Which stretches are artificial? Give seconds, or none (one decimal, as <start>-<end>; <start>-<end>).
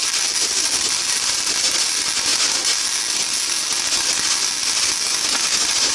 0.0-1.6